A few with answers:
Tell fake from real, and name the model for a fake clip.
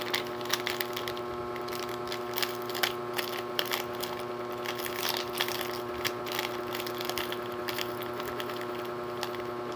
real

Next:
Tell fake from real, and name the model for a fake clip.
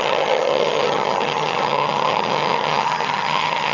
fake, vocoder, HiFi-GAN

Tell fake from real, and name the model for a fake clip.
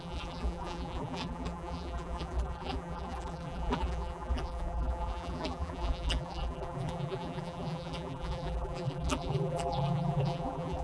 fake, vocoder, BigVGAN v2